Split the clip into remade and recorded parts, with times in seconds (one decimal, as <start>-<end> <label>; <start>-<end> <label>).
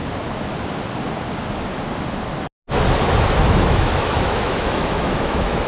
0.0-3.4 recorded; 3.4-5.7 remade